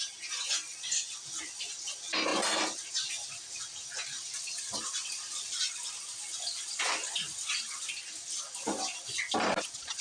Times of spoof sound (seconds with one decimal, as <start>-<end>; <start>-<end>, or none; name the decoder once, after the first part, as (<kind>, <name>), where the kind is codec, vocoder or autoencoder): none

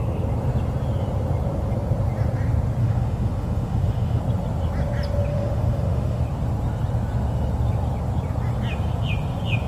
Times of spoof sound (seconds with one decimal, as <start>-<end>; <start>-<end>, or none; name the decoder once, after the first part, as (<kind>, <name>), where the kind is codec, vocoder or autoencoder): 2.8-4.2 (autoencoder, DAC-VAE); 5.3-6.2

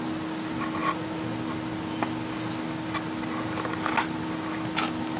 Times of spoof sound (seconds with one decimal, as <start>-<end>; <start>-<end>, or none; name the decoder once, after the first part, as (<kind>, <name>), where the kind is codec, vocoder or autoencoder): none

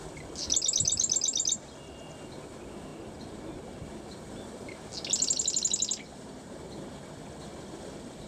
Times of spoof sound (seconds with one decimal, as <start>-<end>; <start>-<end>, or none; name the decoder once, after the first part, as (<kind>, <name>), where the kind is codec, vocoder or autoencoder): none

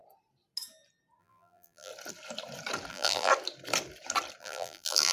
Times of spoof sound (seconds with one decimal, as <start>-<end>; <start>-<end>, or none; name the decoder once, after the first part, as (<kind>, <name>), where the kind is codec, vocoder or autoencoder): 1.2-1.9 (vocoder, BigVGAN v2); 2.9-3.3; 4.4-5.1